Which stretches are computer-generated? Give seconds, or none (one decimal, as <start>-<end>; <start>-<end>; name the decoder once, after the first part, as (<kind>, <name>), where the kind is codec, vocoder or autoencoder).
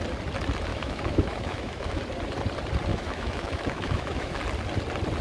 0.7-2.0 (autoencoder, DAC-VAE); 2.9-4.4